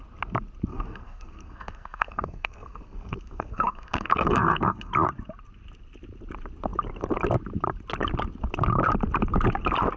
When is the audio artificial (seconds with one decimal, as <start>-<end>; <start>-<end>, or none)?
0.7-4.9